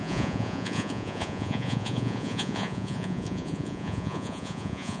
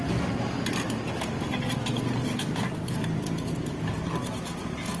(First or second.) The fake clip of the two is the first